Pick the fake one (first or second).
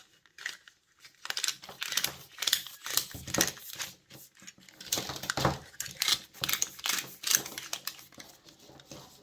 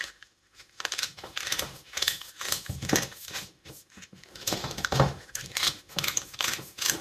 second